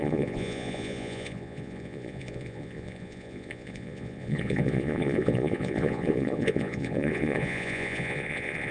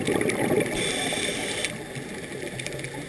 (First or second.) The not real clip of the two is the first